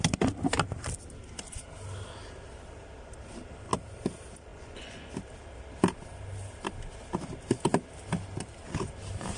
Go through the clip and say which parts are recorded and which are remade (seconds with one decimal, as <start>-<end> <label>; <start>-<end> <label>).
0.0-4.5 recorded; 4.5-5.1 remade; 5.1-9.4 recorded